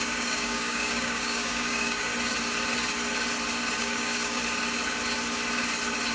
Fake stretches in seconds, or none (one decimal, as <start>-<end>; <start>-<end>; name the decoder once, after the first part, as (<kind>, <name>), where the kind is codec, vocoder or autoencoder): 0.0-2.1 (codec, DAC); 3.8-4.4